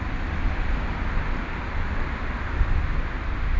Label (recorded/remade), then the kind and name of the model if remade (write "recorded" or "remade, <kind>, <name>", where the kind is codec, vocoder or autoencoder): recorded